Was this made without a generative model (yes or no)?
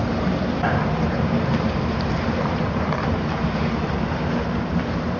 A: no